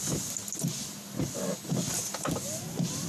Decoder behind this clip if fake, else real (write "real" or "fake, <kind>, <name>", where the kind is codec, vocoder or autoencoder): real